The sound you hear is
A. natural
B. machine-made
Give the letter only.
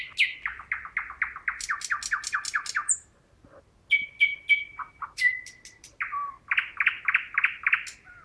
A